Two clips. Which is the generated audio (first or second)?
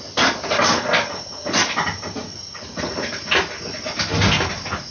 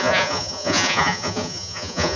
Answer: second